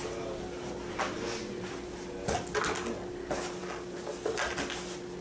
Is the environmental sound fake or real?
real